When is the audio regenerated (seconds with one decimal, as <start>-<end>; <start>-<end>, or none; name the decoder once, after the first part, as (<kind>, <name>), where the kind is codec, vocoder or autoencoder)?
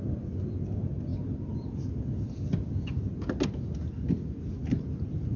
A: none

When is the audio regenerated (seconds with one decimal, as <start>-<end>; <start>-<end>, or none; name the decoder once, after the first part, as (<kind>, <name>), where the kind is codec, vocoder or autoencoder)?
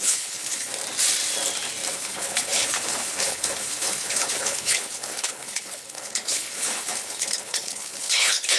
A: 0.0-0.7 (codec, HILCodec); 1.9-8.6